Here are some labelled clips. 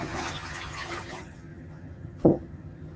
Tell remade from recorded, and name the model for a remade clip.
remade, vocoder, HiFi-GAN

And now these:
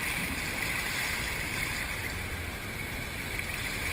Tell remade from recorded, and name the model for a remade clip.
remade, vocoder, BigVGAN v2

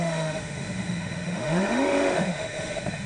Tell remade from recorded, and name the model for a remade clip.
remade, autoencoder, DAC-VAE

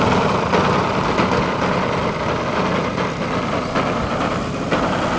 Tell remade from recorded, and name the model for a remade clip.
recorded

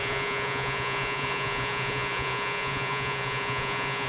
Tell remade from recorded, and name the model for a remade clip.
remade, vocoder, Vocos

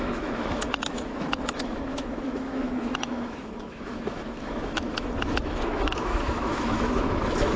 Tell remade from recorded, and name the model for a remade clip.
remade, autoencoder, DAC-VAE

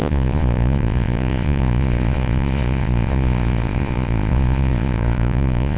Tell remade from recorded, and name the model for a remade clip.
remade, vocoder, Vocos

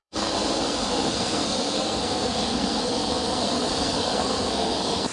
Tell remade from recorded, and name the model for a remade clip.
remade, codec, SNAC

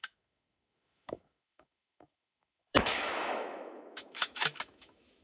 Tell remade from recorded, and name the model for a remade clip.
remade, autoencoder, DAC-VAE